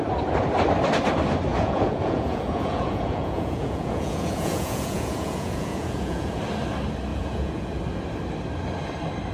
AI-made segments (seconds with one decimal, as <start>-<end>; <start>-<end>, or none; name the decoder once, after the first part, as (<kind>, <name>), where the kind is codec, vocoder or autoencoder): 1.5-6.4 (vocoder, Vocos); 7.1-7.7